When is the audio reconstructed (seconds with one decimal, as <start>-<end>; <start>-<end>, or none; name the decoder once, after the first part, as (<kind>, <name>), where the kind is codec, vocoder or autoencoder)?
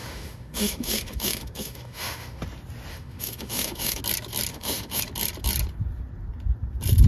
0.0-2.4 (autoencoder, DAC-VAE); 2.9-4.0; 4.5-5.0